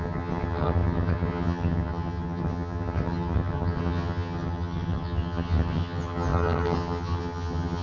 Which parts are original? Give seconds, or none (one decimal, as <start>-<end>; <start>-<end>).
none